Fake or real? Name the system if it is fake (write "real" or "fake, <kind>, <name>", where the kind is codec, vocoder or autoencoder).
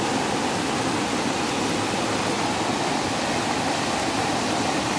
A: real